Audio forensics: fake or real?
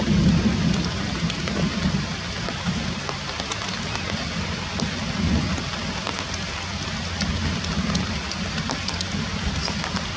real